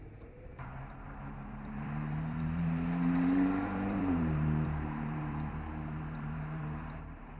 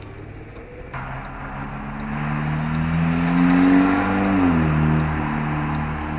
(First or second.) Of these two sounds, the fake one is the first